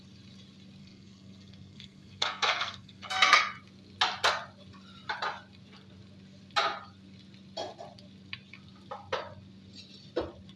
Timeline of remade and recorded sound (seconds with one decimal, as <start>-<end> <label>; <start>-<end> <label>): 0.0-0.8 recorded; 0.8-3.4 remade; 3.4-10.6 recorded